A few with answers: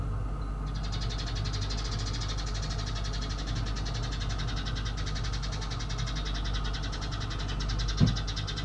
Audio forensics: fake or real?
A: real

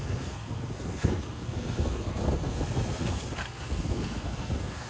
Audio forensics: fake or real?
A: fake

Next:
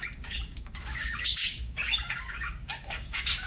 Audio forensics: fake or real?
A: fake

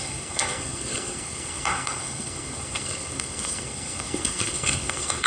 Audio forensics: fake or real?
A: fake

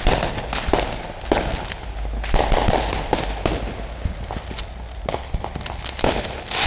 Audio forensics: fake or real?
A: real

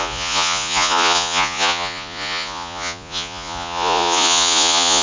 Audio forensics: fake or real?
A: fake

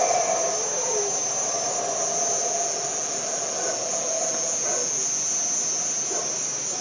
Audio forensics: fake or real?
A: real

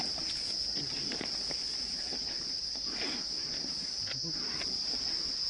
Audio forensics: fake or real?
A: real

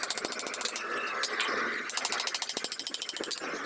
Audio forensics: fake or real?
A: real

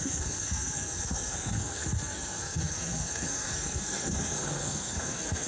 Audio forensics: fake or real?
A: fake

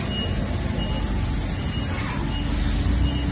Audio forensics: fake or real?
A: real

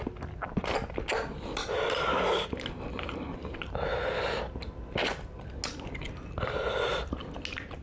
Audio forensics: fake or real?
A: real